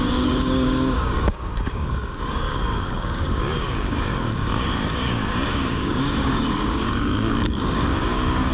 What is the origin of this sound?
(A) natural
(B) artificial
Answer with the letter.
B